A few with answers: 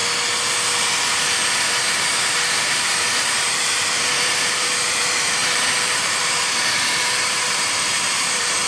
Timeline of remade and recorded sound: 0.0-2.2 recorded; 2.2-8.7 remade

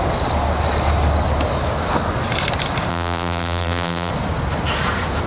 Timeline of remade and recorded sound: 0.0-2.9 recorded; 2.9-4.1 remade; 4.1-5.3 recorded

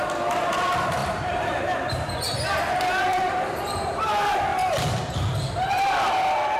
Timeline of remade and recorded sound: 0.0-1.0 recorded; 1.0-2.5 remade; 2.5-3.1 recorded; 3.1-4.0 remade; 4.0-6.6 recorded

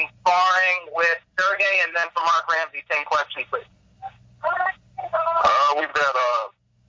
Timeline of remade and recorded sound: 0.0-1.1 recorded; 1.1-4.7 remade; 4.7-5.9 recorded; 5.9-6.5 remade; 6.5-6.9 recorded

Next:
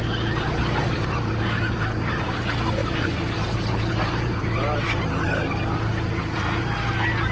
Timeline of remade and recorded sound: 0.0-0.8 recorded; 0.8-1.3 remade; 1.3-2.8 recorded; 2.8-4.9 remade; 4.9-7.3 recorded